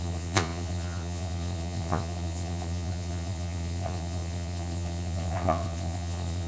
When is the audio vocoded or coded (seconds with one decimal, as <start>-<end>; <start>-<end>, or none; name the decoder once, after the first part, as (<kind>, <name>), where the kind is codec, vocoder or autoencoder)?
0.0-6.5 (vocoder, Vocos)